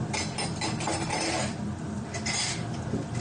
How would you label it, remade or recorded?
recorded